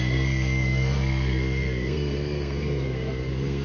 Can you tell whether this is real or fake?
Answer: fake